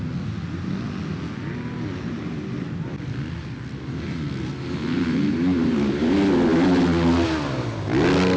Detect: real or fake real